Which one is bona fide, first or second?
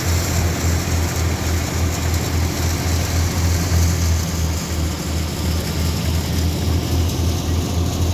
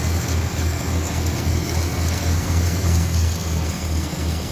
first